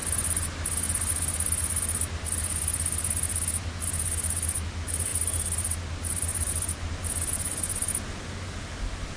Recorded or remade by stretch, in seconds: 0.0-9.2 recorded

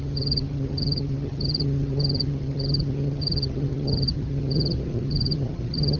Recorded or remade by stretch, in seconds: 0.0-6.0 remade